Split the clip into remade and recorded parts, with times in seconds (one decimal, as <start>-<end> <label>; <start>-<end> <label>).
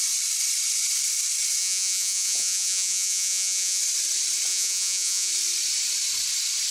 0.0-1.6 recorded; 1.6-3.8 remade; 3.8-4.5 recorded; 4.5-5.3 remade; 5.3-6.7 recorded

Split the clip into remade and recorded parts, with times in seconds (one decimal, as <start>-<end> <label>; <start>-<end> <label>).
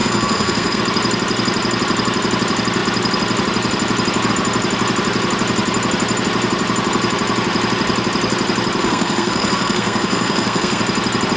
0.0-0.8 remade; 0.8-8.8 recorded; 8.8-10.8 remade; 10.8-11.4 recorded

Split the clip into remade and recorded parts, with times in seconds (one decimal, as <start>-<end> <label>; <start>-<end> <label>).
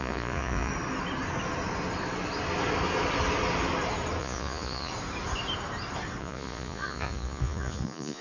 0.0-0.7 remade; 0.7-4.2 recorded; 4.2-4.9 remade; 4.9-6.2 recorded; 6.2-8.2 remade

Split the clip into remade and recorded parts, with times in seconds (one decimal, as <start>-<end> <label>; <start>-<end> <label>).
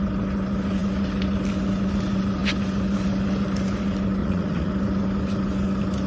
0.0-4.2 recorded; 4.2-4.7 remade; 4.7-6.1 recorded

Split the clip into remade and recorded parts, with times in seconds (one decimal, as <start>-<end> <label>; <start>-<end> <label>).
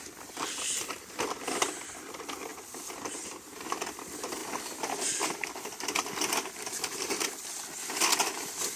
0.0-2.5 remade; 2.5-3.2 recorded; 3.2-4.4 remade; 4.4-6.4 recorded; 6.4-8.8 remade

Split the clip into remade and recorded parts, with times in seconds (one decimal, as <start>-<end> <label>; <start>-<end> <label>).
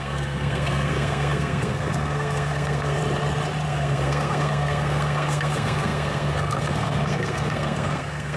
0.0-3.0 remade; 3.0-3.7 recorded; 3.7-8.4 remade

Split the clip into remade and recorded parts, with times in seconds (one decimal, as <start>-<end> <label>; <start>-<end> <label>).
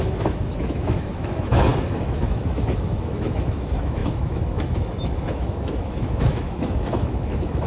0.0-7.7 remade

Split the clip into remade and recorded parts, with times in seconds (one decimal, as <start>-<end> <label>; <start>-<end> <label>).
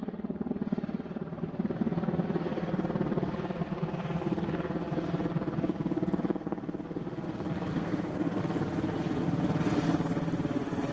0.0-7.7 recorded; 7.7-8.4 remade; 8.4-10.9 recorded